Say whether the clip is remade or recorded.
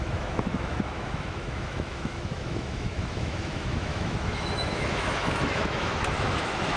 remade